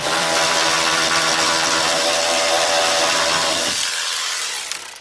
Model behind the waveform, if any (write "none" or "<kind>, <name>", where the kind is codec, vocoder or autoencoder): vocoder, BigVGAN v2